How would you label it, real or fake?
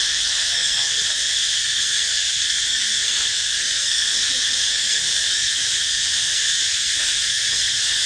fake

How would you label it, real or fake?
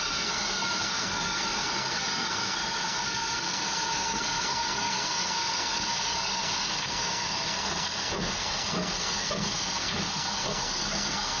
fake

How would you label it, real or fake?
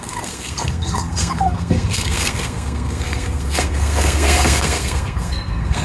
fake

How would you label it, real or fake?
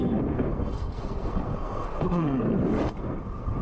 fake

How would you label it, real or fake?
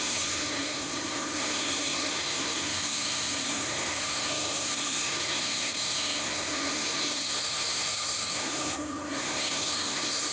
fake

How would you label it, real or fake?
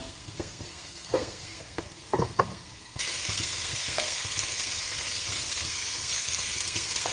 fake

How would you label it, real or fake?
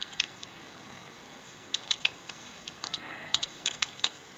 fake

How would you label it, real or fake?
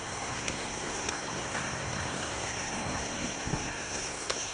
fake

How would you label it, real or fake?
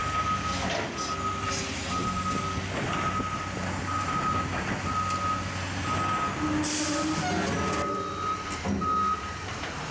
real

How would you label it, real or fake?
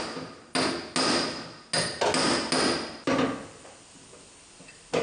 real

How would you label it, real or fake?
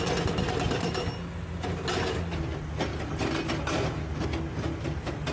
real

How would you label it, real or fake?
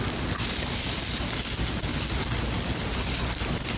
real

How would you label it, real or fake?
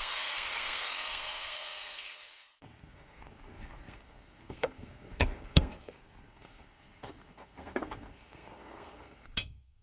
fake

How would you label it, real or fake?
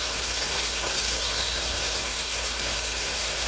fake